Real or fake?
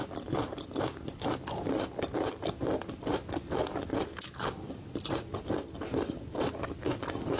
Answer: real